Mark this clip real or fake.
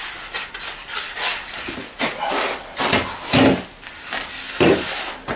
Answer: real